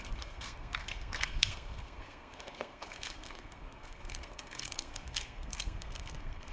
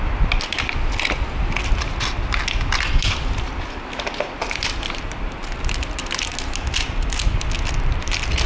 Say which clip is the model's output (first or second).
first